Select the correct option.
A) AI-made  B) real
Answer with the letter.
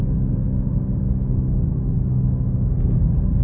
A